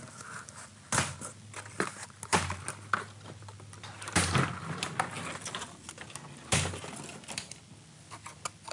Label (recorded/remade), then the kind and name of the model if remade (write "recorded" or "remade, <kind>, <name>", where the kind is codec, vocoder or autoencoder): recorded